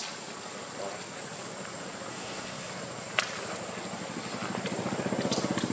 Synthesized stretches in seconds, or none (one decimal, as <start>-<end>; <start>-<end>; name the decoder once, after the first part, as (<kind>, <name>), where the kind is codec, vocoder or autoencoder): 2.1-2.7 (codec, SNAC)